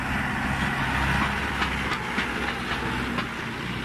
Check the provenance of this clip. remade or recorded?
recorded